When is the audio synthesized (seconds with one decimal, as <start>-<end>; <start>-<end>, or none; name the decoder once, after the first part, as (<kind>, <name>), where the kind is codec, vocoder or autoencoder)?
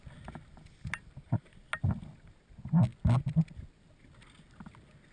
0.5-1.5 (vocoder, BigVGAN v2)